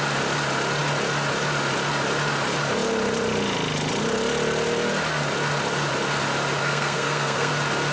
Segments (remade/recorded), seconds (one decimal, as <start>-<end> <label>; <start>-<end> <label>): 0.0-6.6 recorded; 6.6-7.5 remade; 7.5-7.9 recorded